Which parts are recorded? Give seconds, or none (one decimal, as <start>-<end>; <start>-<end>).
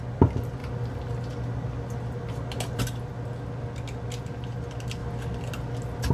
0.0-6.1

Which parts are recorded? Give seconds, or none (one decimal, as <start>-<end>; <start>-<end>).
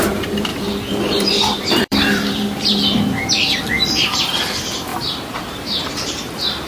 none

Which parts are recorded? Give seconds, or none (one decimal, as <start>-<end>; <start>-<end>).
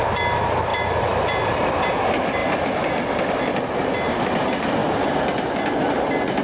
0.0-0.7; 1.9-6.4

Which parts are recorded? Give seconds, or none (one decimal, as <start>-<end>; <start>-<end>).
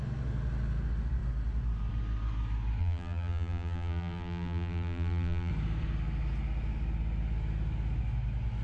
0.0-2.8; 5.5-8.6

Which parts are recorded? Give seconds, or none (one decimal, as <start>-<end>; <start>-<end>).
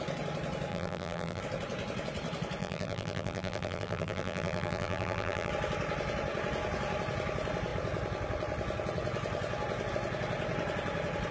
0.0-0.7; 1.4-2.6; 5.5-11.3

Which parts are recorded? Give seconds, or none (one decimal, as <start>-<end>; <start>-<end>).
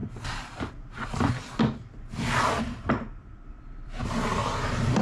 0.0-2.6; 4.0-5.0